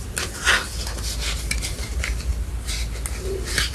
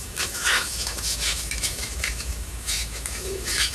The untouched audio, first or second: first